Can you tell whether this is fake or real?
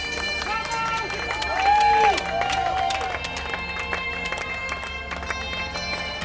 real